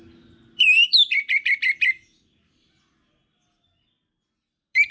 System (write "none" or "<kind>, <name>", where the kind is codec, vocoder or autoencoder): none